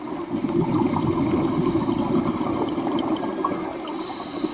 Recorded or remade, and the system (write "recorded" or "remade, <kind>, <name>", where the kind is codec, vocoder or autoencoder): recorded